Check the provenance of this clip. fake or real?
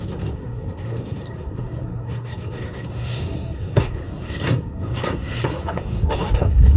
fake